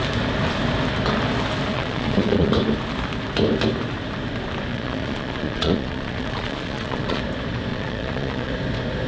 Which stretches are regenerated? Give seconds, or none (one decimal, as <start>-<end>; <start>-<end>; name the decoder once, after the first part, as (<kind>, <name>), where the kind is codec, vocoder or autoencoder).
1.7-2.5 (vocoder, Vocos); 4.7-7.2; 7.7-8.5